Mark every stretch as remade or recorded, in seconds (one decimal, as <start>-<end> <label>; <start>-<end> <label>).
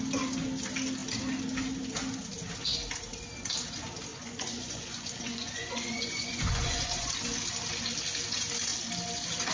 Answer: 0.0-4.1 recorded; 4.1-7.1 remade; 7.1-9.5 recorded